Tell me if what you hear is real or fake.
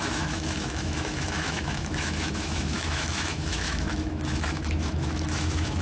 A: fake